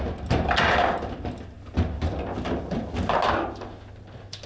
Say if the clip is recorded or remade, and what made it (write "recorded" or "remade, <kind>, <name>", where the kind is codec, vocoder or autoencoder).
recorded